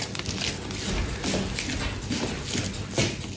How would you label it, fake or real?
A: real